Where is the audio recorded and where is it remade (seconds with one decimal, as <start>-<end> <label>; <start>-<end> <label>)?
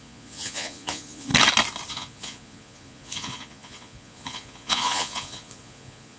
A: 0.0-1.3 remade; 1.3-1.9 recorded; 1.9-6.2 remade